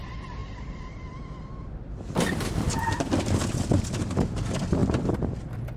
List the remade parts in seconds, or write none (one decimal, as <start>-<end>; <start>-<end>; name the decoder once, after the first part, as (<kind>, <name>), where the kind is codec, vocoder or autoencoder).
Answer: 4.8-5.8 (vocoder, BigVGAN v2)